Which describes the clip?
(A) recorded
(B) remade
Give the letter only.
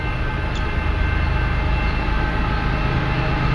A